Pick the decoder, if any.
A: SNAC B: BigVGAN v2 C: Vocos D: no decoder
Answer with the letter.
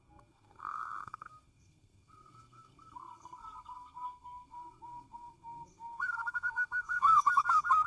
A